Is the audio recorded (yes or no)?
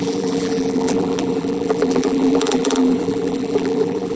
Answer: no